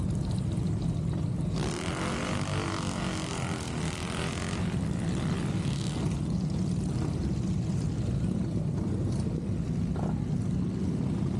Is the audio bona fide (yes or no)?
yes